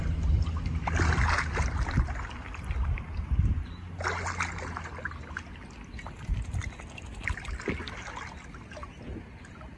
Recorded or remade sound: recorded